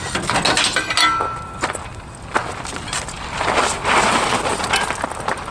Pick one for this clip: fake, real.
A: real